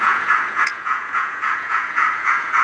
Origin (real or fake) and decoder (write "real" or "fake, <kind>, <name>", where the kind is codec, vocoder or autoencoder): fake, vocoder, Vocos